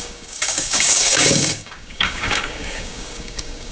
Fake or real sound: fake